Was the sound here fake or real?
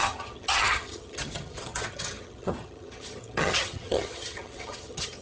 fake